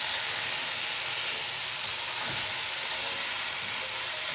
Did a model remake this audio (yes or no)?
no